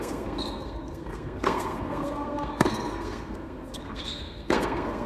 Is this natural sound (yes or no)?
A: no